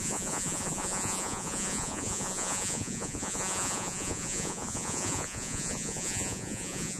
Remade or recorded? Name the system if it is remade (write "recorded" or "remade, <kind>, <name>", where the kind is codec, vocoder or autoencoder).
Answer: remade, vocoder, Vocos